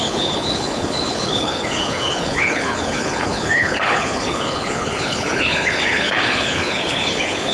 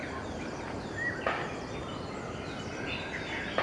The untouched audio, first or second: second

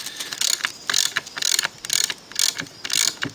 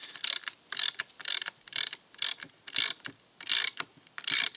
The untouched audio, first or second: first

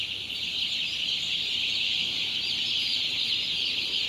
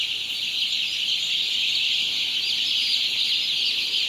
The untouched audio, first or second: second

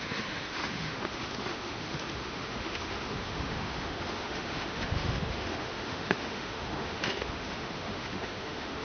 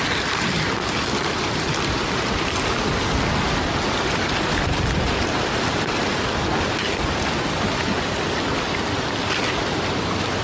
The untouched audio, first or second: second